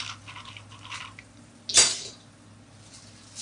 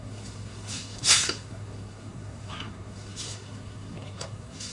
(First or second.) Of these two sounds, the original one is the first